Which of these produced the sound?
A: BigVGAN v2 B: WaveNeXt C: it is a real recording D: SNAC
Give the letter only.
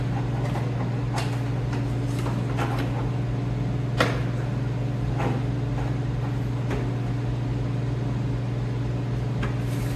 C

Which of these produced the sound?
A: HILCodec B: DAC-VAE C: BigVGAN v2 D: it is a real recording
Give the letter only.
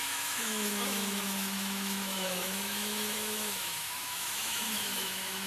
B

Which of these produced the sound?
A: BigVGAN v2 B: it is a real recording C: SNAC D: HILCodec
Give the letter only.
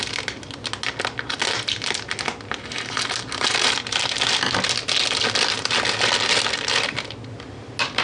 B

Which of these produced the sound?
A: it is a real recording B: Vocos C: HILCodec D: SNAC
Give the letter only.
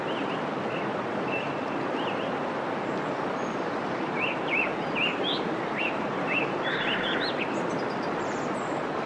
A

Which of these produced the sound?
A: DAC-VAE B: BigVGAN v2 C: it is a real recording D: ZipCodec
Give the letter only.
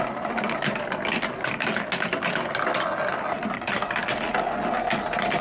C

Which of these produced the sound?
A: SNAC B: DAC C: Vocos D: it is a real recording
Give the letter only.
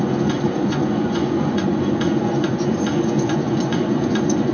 C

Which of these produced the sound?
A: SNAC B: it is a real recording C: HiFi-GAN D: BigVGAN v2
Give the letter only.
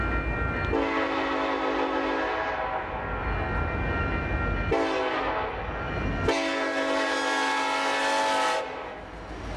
B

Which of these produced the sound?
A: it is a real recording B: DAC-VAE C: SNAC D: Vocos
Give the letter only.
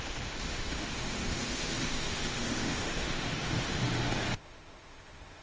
B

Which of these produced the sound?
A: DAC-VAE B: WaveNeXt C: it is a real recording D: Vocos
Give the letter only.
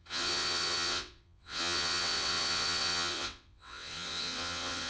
B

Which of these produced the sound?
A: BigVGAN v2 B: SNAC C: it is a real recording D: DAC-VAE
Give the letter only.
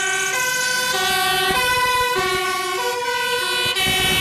C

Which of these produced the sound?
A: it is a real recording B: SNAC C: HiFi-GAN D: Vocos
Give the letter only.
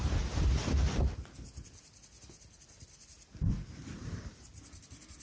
A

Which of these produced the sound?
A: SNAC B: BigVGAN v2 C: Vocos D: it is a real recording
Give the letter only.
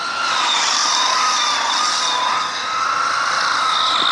D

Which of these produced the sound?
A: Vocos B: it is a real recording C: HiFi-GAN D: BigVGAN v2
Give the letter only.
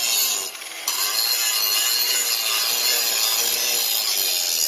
B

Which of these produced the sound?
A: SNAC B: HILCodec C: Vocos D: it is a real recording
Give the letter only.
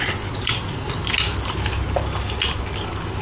D